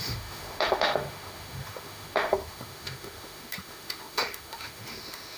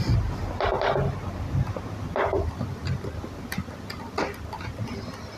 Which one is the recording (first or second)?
second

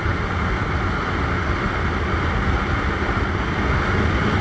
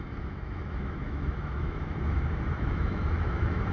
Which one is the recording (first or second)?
first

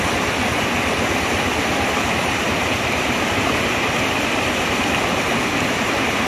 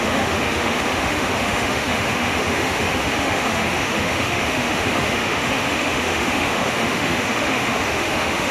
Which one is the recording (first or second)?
first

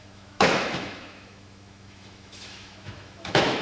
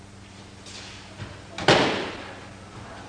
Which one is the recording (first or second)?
second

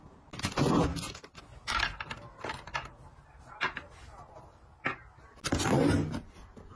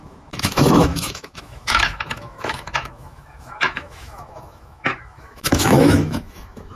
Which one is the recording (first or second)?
first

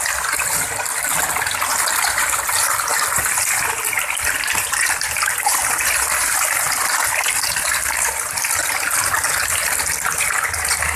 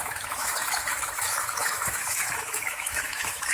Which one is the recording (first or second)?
first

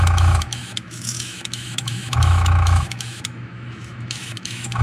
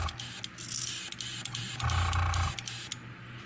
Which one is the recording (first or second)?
second